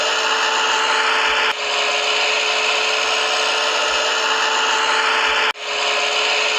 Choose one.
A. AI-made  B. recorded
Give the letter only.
B